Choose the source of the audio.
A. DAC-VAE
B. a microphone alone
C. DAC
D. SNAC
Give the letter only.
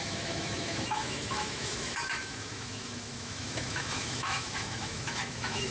A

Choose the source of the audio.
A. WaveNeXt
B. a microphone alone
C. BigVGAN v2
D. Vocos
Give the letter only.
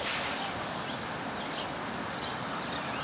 B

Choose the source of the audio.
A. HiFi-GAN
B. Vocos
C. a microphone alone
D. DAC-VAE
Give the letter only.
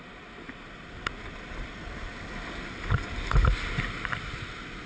C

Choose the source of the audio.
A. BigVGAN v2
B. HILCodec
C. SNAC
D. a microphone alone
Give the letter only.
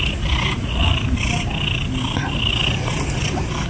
D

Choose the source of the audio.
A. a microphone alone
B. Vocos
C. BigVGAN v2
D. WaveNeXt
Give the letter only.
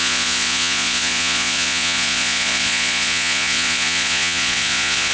B